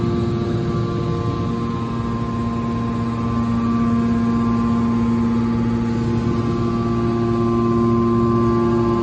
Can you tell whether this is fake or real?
real